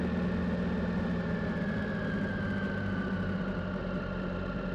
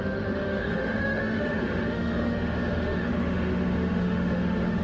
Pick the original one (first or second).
first